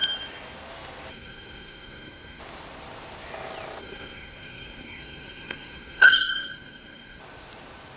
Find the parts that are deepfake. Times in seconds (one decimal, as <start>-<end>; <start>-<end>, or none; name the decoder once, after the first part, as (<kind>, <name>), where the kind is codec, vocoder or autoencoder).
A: 1.1-2.4 (codec, SNAC); 3.8-7.2